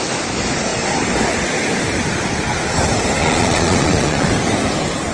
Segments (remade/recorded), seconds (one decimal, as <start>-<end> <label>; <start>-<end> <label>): 0.0-3.2 recorded; 3.2-4.3 remade; 4.3-5.1 recorded